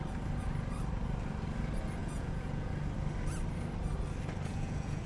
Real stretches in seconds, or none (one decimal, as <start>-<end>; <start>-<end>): 0.0-2.0; 2.7-4.5